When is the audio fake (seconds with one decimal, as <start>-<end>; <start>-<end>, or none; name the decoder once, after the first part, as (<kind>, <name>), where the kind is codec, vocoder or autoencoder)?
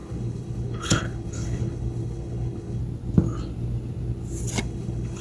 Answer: 0.0-2.8 (codec, HILCodec); 4.6-5.2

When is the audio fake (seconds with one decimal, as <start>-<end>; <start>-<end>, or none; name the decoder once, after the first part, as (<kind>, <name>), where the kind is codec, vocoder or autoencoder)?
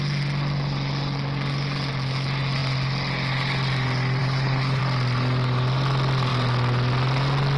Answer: 4.2-4.8 (codec, HILCodec)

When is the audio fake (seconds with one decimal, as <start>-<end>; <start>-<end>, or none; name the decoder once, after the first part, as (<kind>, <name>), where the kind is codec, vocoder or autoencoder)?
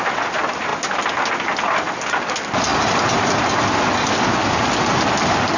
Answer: none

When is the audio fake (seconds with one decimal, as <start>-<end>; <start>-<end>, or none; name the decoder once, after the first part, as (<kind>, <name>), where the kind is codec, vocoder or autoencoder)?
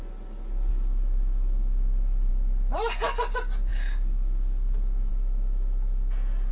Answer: 0.7-2.3 (codec, DAC); 3.7-5.1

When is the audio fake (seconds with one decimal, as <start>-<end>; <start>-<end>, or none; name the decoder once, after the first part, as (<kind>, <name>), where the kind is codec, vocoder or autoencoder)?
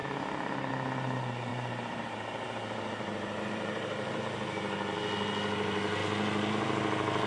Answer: 1.5-4.2 (vocoder, BigVGAN v2)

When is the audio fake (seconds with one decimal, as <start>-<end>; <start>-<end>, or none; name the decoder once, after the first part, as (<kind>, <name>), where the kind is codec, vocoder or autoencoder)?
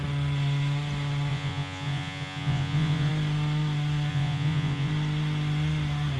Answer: 1.3-3.1 (vocoder, Vocos); 4.1-4.9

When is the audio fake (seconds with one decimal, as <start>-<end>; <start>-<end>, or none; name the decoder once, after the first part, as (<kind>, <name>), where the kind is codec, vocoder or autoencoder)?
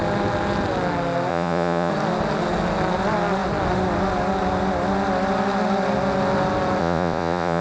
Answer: 1.3-1.9 (vocoder, Vocos); 6.8-7.6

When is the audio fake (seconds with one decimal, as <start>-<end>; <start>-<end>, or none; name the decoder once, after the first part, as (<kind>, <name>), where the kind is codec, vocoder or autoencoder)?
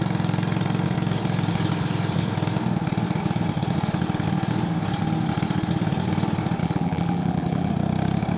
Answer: 6.6-7.7 (vocoder, BigVGAN v2)